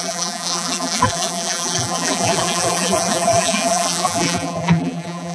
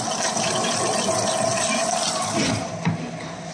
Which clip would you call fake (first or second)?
first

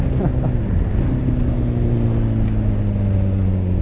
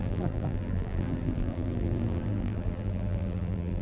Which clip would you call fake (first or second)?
second